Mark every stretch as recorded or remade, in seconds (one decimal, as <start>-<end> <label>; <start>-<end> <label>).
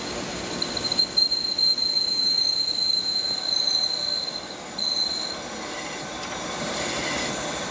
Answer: 0.0-7.7 recorded